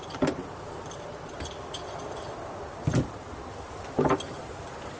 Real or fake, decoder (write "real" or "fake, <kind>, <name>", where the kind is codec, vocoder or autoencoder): real